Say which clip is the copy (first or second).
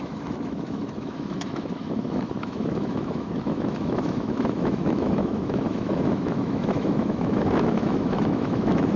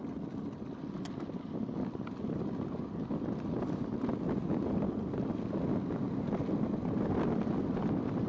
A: first